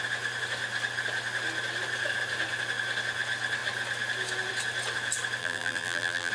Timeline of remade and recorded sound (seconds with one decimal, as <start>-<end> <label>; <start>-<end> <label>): 0.0-5.4 recorded; 5.4-6.3 remade